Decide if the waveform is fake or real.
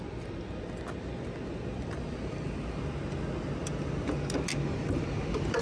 real